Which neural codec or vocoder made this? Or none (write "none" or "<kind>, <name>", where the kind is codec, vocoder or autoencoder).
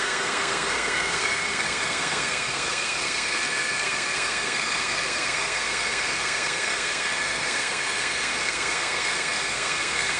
codec, SNAC